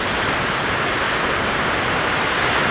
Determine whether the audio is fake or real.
real